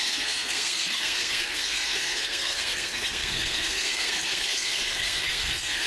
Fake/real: fake